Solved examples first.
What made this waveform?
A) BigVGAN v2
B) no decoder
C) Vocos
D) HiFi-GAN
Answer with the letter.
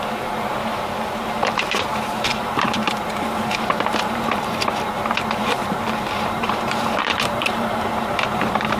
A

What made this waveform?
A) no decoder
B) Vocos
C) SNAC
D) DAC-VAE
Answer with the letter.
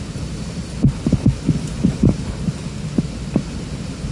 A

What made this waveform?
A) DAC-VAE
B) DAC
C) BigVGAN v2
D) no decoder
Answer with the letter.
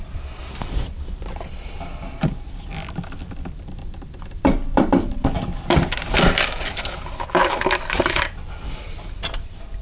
C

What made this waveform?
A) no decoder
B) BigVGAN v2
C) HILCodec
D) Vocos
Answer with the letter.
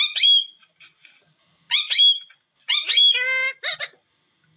A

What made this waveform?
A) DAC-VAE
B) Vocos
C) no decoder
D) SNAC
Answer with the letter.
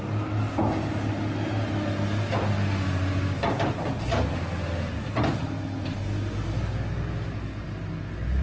C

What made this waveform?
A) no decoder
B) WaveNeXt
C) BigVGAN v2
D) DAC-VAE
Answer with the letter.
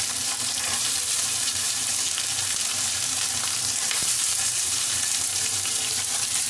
C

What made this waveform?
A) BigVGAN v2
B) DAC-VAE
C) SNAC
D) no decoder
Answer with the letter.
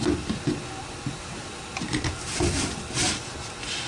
D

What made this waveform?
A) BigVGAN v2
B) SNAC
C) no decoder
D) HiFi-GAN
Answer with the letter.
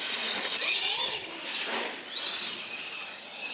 C